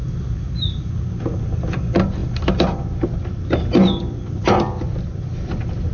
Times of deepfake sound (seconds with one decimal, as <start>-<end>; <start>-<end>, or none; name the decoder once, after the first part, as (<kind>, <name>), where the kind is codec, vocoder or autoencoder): 0.0-0.9 (vocoder, BigVGAN v2); 2.2-5.9